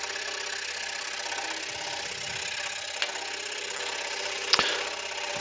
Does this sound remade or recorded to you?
recorded